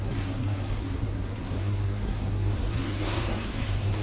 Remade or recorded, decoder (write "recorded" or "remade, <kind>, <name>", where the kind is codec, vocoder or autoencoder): remade, codec, SNAC